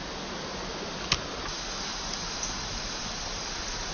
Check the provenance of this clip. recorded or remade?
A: recorded